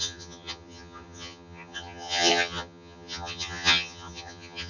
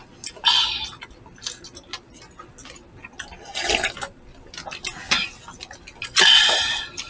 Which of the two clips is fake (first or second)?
first